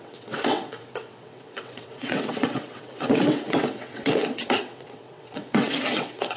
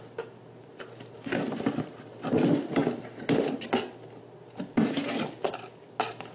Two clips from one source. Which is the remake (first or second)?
first